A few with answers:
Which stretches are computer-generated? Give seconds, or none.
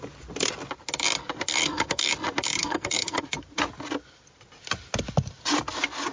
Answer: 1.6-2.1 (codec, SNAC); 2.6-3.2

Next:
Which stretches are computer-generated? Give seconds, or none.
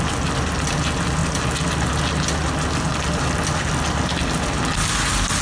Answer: none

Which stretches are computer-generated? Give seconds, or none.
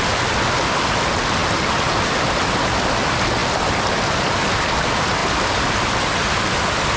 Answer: none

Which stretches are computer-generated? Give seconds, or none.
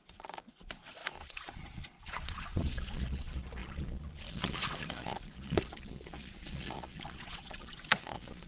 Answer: 0.0-8.5 (vocoder, Vocos)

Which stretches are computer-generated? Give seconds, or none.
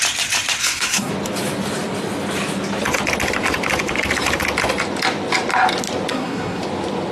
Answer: 0.6-1.1 (codec, SNAC); 6.1-6.6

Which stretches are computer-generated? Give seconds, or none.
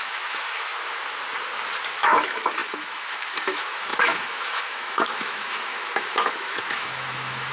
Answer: 0.0-0.7 (autoencoder, DAC-VAE); 2.0-7.5